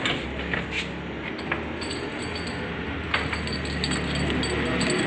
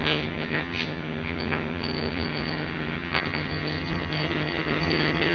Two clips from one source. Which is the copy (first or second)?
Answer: second